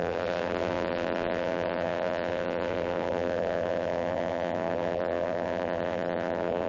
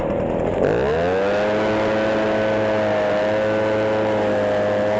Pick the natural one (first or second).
second